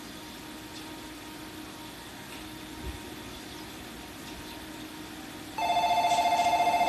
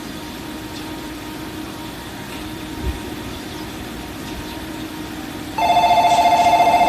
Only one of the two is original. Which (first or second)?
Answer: first